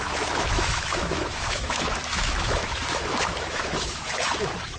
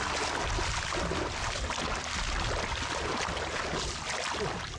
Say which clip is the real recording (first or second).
second